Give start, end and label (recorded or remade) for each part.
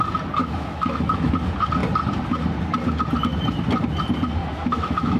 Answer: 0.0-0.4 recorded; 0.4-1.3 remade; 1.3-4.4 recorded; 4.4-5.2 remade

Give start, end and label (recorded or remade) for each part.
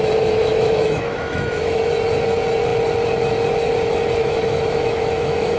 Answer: 0.0-0.4 recorded; 0.4-1.8 remade; 1.8-4.2 recorded; 4.2-5.6 remade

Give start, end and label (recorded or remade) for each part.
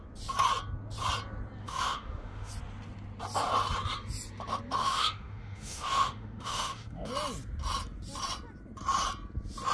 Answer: 0.0-1.6 recorded; 1.6-2.5 remade; 2.5-4.8 recorded; 4.8-7.1 remade; 7.1-9.7 recorded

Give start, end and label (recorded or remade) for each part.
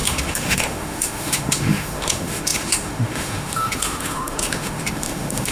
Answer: 0.0-5.5 remade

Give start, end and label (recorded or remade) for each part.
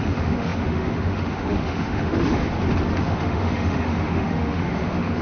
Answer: 0.0-2.4 remade; 2.4-2.9 recorded; 2.9-5.2 remade